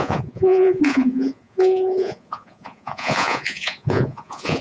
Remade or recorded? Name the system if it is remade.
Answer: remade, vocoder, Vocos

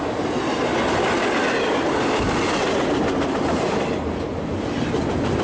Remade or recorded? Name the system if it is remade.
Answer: recorded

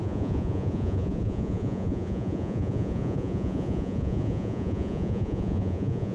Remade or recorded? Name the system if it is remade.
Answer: remade, vocoder, Vocos